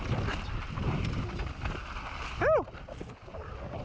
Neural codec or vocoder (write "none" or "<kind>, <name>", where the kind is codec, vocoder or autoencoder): none